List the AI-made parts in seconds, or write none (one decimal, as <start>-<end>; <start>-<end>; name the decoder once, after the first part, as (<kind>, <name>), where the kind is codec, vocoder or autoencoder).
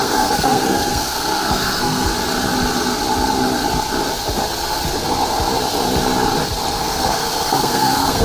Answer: 0.0-2.1 (codec, SNAC); 6.7-8.2